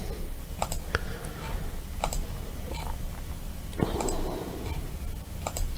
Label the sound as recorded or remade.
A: recorded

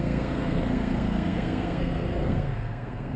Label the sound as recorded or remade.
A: remade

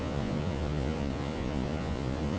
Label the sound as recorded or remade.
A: remade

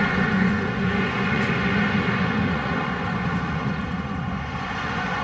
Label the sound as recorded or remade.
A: remade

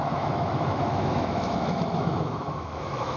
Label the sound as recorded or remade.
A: remade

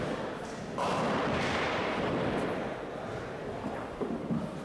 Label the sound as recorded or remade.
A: remade